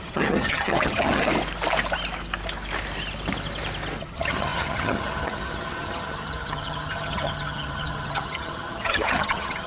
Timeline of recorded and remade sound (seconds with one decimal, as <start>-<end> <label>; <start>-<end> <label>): 0.0-1.3 remade; 1.3-4.0 recorded; 4.0-9.7 remade